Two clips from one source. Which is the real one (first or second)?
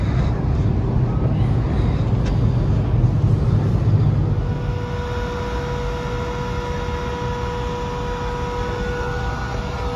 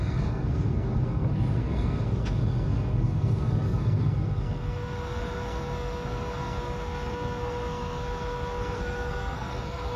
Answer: first